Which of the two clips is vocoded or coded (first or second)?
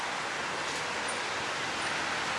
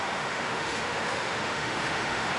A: second